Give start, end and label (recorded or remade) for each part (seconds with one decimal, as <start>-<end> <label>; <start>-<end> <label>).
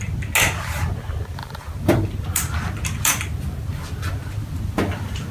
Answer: 0.0-1.4 recorded; 1.4-4.6 remade; 4.6-5.3 recorded